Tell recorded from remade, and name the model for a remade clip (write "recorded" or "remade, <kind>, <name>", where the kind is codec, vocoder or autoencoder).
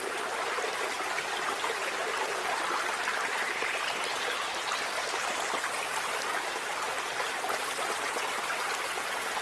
recorded